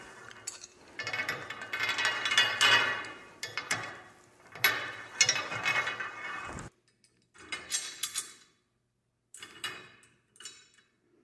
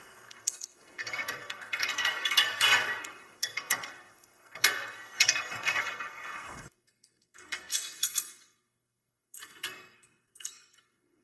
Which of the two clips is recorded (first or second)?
first